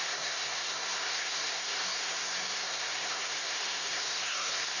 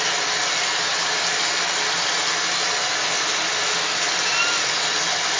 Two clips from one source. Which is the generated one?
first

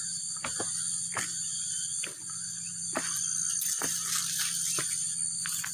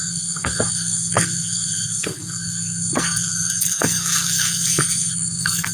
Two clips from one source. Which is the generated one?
second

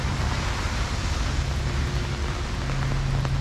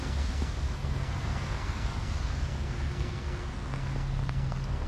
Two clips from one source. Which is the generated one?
second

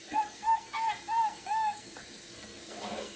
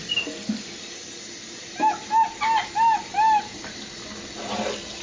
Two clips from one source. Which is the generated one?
first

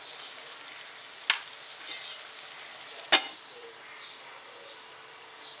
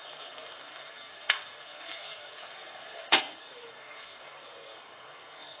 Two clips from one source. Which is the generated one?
second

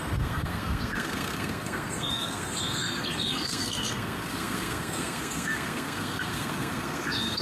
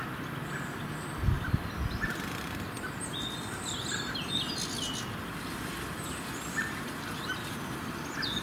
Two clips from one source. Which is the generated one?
first